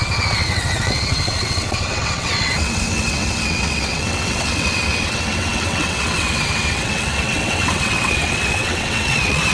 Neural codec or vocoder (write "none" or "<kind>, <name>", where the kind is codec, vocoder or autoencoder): vocoder, WaveNeXt